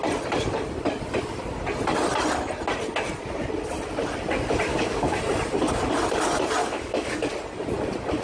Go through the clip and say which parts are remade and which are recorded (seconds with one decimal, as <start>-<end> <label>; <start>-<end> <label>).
0.0-4.7 recorded; 4.7-5.2 remade; 5.2-6.6 recorded; 6.6-7.3 remade; 7.3-8.2 recorded